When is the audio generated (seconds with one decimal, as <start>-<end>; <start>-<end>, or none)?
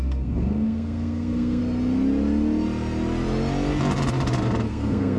0.0-1.6; 4.7-5.2